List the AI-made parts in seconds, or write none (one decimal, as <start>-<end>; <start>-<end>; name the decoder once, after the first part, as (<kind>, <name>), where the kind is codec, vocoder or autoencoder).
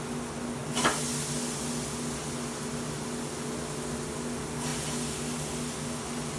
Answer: none